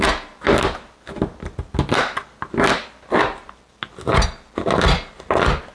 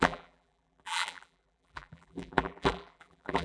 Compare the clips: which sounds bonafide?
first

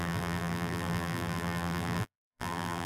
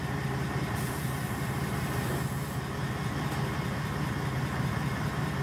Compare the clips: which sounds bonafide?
second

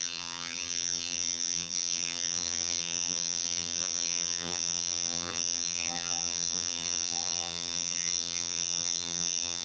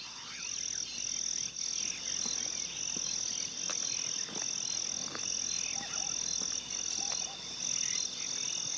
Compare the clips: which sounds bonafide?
second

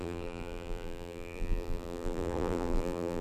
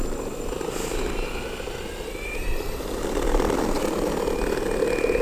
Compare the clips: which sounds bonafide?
second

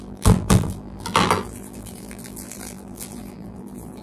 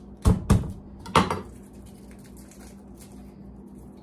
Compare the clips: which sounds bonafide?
second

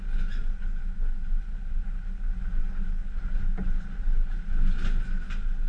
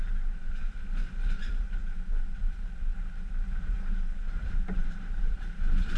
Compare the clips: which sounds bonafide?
first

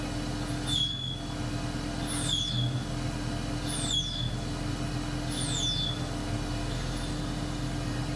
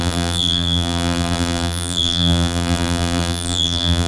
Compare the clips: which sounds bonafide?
first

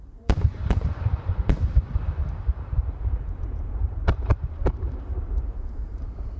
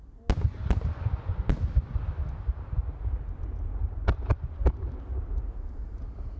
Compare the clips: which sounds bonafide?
second